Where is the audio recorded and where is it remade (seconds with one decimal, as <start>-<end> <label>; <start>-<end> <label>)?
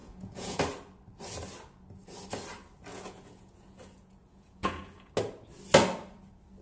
0.0-0.6 remade; 0.6-2.9 recorded; 2.9-5.1 remade; 5.1-6.6 recorded